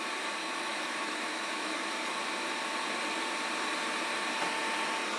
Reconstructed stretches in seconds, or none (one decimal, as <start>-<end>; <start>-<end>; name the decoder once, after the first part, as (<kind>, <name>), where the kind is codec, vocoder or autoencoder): 0.4-2.1 (autoencoder, DAC-VAE)